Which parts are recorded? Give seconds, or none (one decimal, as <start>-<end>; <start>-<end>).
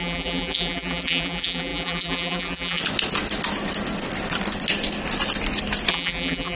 2.8-5.9